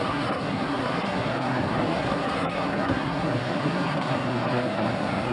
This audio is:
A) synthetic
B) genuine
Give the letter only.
A